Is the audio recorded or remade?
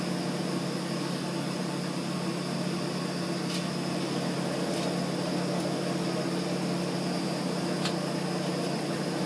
recorded